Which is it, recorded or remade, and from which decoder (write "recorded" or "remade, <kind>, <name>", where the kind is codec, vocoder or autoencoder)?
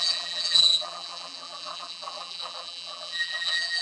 remade, vocoder, BigVGAN v2